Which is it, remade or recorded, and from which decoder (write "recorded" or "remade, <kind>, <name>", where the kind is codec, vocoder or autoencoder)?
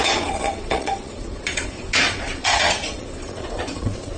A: remade, vocoder, Vocos